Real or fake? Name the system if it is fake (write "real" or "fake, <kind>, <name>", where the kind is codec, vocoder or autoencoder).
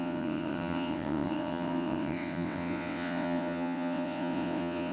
fake, vocoder, WaveNeXt